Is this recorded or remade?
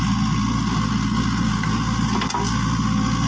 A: recorded